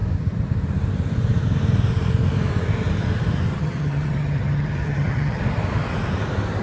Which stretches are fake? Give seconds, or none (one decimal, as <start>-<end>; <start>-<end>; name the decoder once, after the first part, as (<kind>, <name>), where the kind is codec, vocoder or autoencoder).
3.5-5.4 (vocoder, HiFi-GAN)